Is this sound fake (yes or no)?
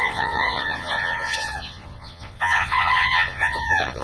yes